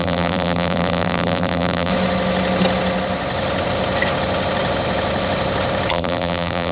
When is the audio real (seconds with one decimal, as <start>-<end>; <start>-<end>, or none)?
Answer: 1.9-5.9